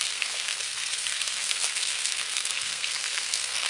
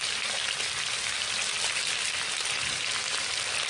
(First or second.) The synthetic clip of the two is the first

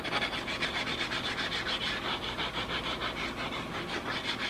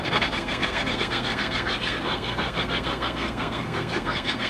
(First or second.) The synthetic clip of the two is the second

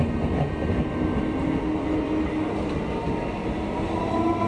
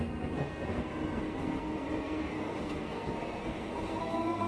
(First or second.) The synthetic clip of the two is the second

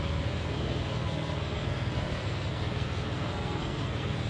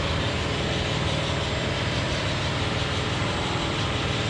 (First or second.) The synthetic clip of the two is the first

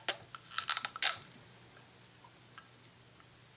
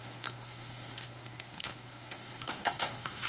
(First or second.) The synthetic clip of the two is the second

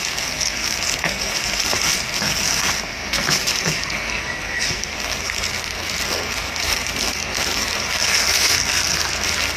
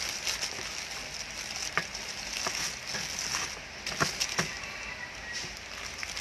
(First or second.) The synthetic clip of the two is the first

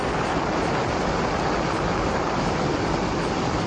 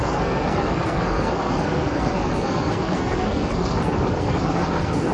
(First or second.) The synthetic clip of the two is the second